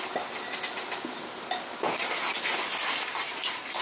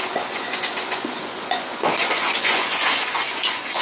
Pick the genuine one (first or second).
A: first